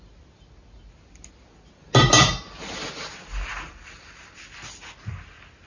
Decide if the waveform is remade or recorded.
recorded